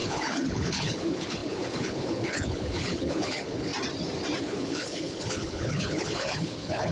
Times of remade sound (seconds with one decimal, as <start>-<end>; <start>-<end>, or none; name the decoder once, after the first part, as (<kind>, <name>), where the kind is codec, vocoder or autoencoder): 0.0-3.7 (codec, HILCodec); 4.4-6.9